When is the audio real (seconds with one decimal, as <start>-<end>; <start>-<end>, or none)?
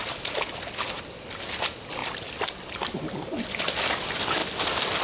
0.0-2.0; 3.8-5.0